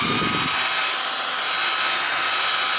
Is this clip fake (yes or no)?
no